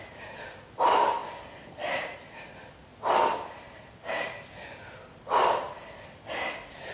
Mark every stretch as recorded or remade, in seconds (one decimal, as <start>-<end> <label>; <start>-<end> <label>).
0.0-6.9 recorded